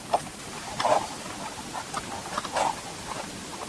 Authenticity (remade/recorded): recorded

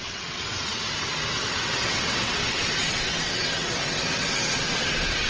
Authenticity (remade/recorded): remade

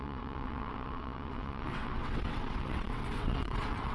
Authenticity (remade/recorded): remade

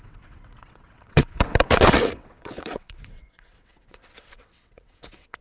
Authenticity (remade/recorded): remade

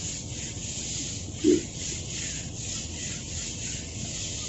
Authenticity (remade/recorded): remade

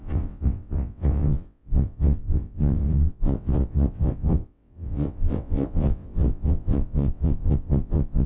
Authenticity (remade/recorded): remade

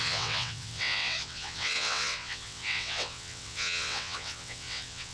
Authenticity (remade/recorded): remade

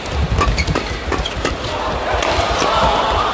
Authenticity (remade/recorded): recorded